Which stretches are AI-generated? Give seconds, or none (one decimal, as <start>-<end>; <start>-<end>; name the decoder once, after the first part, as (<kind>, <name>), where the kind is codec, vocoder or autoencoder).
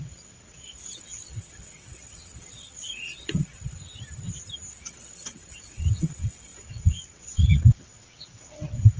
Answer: 0.0-3.8 (vocoder, WaveNeXt); 4.7-9.0